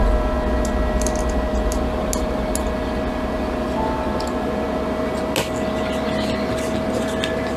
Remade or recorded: recorded